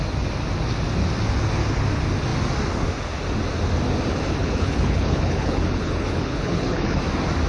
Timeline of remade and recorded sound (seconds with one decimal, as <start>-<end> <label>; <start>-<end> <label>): 0.0-4.4 recorded; 4.4-7.0 remade; 7.0-7.5 recorded